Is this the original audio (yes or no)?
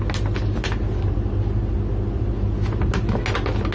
yes